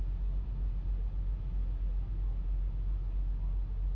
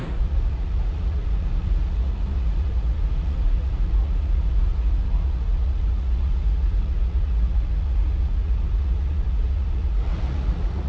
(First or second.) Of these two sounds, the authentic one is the first